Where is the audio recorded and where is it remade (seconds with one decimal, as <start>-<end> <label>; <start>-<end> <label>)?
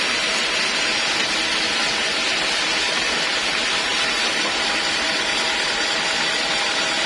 0.0-7.1 recorded